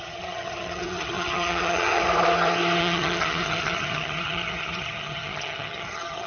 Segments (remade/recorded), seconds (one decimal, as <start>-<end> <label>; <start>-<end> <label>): 0.0-2.0 remade; 2.0-2.8 recorded; 2.8-6.3 remade

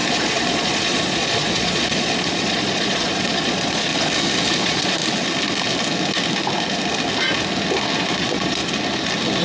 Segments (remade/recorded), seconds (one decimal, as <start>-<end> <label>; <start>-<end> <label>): 0.0-3.9 remade; 3.9-4.5 recorded; 4.5-5.0 remade; 5.0-8.2 recorded; 8.2-8.6 remade; 8.6-9.4 recorded